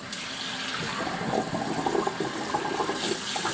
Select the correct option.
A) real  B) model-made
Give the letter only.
A